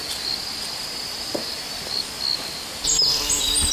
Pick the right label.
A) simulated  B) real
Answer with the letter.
B